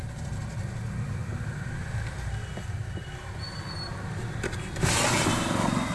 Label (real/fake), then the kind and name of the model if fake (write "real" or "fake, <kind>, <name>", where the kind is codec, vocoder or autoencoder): real